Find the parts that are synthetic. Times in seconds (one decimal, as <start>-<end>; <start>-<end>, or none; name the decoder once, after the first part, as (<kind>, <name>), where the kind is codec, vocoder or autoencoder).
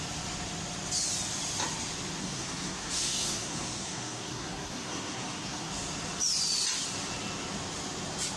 2.2-5.7 (codec, SNAC)